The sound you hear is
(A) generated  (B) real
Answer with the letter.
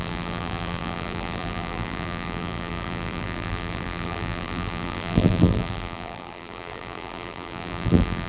A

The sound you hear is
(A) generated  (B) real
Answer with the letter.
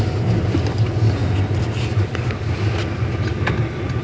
B